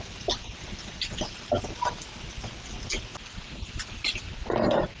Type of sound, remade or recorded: recorded